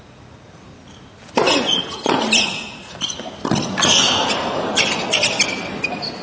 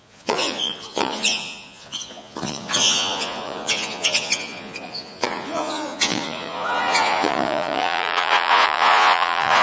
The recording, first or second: first